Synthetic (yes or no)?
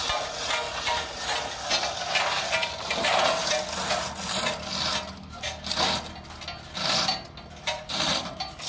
no